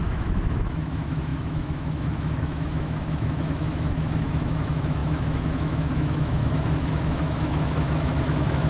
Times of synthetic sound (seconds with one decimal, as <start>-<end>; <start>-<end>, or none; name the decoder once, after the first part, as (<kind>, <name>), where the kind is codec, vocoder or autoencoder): 0.0-8.7 (autoencoder, DAC-VAE)